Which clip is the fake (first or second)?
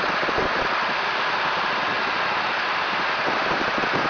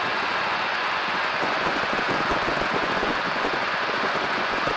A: second